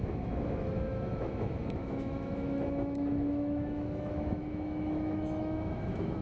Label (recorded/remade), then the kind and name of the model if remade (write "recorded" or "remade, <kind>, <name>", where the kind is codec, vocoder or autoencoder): remade, autoencoder, DAC-VAE